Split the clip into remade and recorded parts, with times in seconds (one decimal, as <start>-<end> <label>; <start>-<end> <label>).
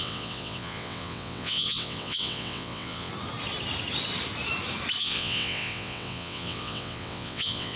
0.0-3.1 remade; 3.1-5.0 recorded; 5.0-7.8 remade